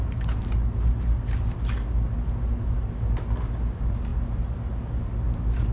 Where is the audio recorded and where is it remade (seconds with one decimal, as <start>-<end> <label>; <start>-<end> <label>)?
0.0-5.7 recorded